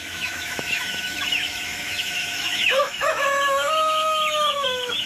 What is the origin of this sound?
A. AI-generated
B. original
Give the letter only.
A